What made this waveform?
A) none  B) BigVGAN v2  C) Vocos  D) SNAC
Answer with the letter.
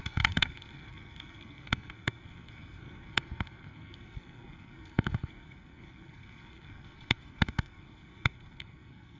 D